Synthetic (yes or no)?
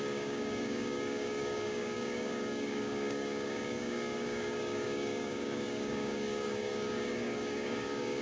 yes